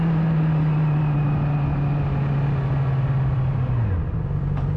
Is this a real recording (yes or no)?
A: yes